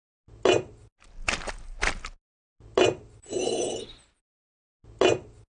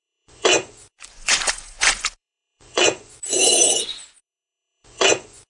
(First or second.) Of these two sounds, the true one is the first